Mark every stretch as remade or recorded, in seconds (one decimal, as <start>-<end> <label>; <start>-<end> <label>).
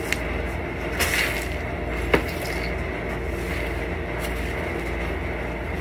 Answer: 0.0-5.8 recorded